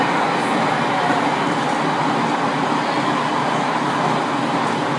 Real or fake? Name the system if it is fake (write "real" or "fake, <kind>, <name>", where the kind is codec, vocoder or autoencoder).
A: real